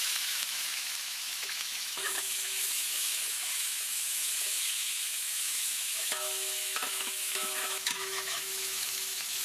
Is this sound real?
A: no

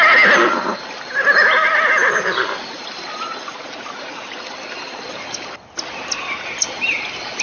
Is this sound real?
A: yes